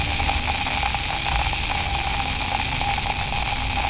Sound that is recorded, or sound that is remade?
recorded